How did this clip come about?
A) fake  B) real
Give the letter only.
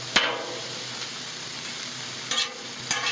B